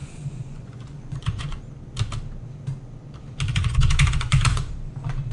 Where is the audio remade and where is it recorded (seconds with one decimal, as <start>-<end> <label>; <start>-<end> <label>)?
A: 0.0-1.6 remade; 1.6-3.5 recorded; 3.5-4.7 remade; 4.7-5.3 recorded